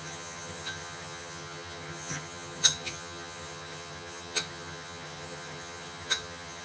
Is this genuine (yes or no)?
no